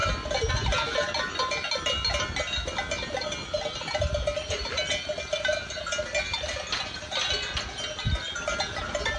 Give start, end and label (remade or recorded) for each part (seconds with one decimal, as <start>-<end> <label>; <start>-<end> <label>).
0.0-0.5 remade; 0.5-9.2 recorded